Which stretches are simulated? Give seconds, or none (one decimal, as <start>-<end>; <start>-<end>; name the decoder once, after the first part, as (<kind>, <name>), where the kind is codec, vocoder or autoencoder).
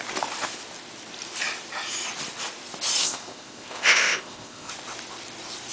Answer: 3.0-4.7 (codec, ZipCodec)